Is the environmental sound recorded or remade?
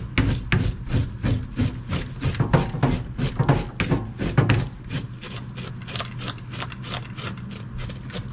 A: recorded